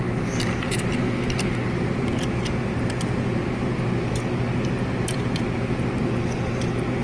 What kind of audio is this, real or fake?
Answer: real